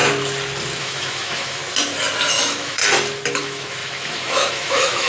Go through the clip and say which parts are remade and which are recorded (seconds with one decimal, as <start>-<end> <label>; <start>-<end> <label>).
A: 0.0-0.8 recorded; 0.8-1.6 remade; 1.6-2.3 recorded; 2.3-2.8 remade; 2.8-3.4 recorded; 3.4-5.1 remade